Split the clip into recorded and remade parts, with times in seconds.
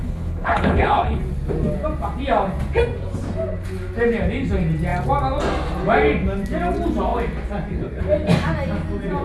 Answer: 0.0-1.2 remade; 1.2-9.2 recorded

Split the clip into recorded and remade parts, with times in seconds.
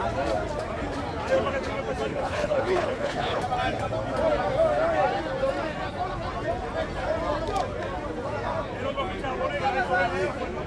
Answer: 0.0-2.1 recorded; 2.1-3.4 remade; 3.4-10.7 recorded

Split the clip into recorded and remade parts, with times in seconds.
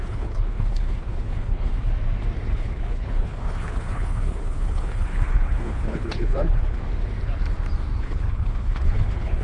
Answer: 0.0-1.7 remade; 1.7-2.5 recorded; 2.5-6.8 remade; 6.8-8.0 recorded; 8.0-9.4 remade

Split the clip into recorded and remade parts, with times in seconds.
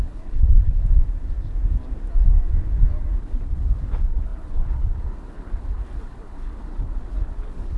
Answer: 0.0-0.8 remade; 0.8-3.2 recorded; 3.2-7.8 remade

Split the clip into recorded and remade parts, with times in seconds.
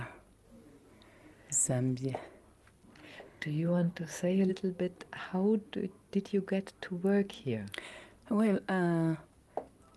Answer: 0.0-3.0 recorded; 3.0-4.5 remade; 4.5-10.0 recorded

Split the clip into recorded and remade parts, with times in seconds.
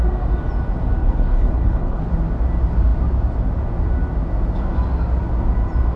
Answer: 0.0-1.0 recorded; 1.0-2.0 remade; 2.0-6.0 recorded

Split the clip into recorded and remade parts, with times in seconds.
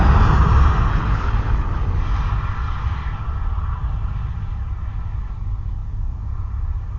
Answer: 0.0-0.9 recorded; 0.9-2.0 remade; 2.0-7.0 recorded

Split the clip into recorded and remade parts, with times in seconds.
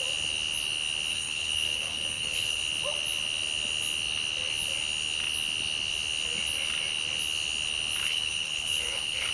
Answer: 0.0-1.1 recorded; 1.1-2.6 remade; 2.6-8.0 recorded; 8.0-9.3 remade